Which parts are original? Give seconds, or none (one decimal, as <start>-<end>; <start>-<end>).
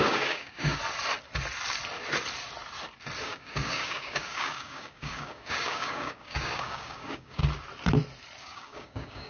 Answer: 0.8-3.2; 7.4-8.4